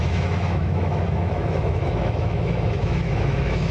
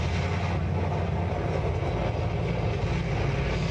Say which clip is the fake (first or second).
first